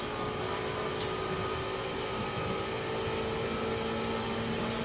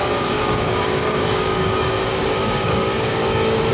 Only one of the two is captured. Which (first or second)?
first